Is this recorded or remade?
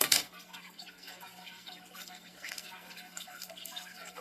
remade